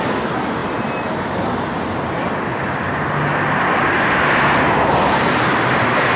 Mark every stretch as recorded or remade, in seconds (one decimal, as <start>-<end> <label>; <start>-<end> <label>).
0.0-6.2 recorded